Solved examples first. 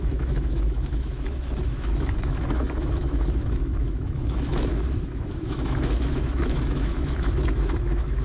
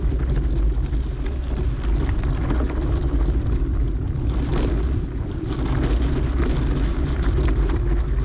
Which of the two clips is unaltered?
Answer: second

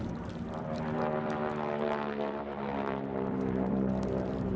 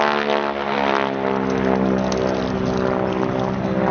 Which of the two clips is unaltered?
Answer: second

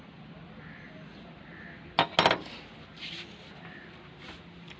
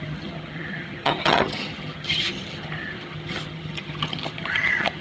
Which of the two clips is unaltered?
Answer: first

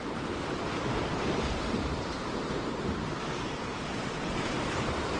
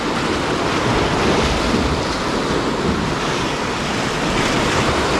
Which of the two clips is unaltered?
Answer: second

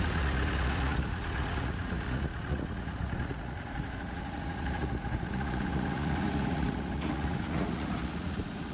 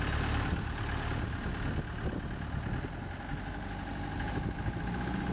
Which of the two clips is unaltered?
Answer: second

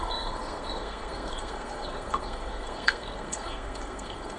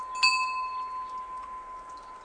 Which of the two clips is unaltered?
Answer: second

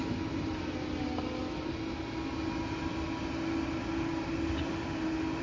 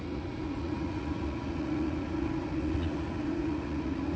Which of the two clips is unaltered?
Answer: first